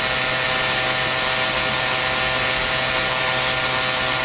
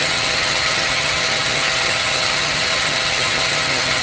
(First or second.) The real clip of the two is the first